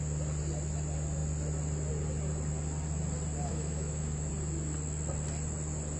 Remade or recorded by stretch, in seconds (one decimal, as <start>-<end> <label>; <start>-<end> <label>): 0.0-3.5 recorded; 3.5-4.3 remade; 4.3-6.0 recorded